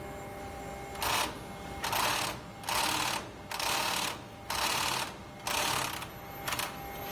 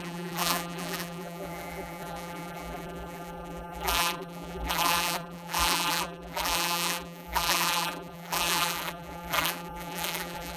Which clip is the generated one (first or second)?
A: second